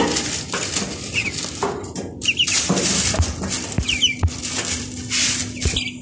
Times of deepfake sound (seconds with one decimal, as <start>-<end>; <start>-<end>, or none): none